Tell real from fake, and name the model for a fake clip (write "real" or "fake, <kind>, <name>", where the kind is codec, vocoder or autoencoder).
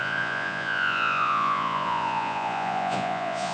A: fake, vocoder, Vocos